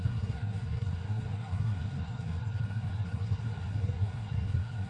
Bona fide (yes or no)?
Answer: no